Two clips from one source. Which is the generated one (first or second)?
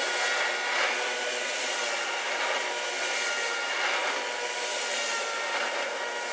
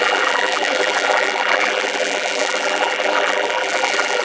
second